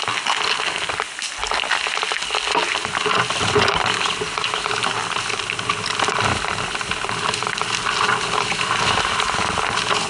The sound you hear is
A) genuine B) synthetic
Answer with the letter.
A